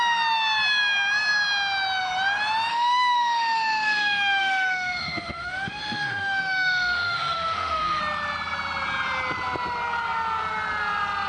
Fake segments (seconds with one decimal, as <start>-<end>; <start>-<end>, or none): 2.7-8.0